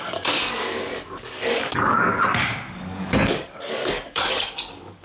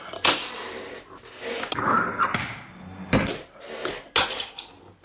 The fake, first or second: first